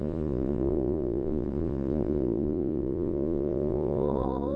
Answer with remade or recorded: remade